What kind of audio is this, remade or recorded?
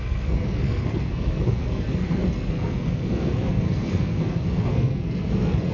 remade